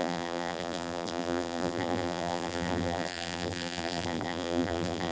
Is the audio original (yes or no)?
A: no